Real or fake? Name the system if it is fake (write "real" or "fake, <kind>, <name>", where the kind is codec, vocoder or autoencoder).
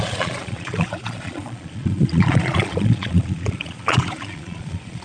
fake, vocoder, Vocos